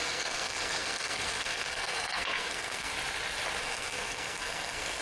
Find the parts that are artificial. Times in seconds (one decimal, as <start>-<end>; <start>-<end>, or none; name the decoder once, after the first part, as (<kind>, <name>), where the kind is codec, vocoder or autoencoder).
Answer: 0.0-2.9 (codec, SNAC); 3.6-5.0

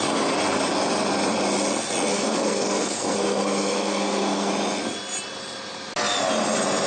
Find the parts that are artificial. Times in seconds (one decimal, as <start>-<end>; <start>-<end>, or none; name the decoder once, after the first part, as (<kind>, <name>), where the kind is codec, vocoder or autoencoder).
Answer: 2.1-4.5 (codec, SNAC)

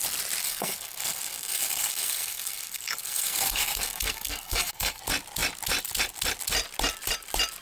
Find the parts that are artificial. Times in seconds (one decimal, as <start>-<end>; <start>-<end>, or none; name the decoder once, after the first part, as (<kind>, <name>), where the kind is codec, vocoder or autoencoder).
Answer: 0.4-5.0 (codec, SNAC)

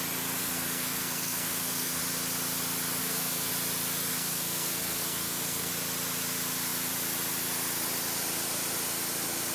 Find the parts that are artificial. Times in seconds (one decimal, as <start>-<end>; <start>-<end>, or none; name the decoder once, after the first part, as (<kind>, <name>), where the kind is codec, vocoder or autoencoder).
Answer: 0.4-2.0 (codec, SNAC); 3.0-3.5; 4.1-5.7

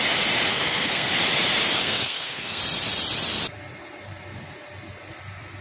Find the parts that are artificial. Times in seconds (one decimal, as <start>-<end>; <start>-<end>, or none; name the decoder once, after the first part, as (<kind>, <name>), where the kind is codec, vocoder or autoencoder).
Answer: 0.5-1.1 (codec, SNAC); 1.8-2.6

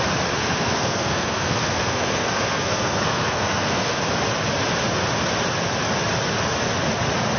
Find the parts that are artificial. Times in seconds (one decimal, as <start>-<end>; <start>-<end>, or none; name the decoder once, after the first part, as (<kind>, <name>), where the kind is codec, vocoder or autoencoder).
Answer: 0.4-4.0 (codec, SNAC)

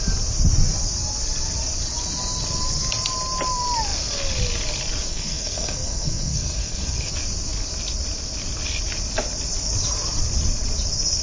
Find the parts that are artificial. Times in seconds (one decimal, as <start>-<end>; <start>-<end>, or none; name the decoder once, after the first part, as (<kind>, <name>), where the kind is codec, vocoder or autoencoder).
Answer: 5.1-7.1 (codec, SNAC)

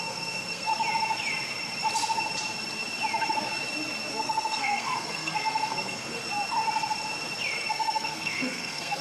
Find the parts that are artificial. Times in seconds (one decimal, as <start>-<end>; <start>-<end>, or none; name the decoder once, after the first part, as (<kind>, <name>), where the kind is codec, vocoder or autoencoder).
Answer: 0.0-0.7 (codec, SNAC); 4.1-6.2; 7.7-9.0